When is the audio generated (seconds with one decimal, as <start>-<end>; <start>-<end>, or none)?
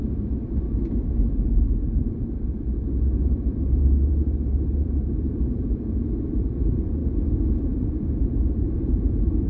0.0-7.0; 7.6-9.5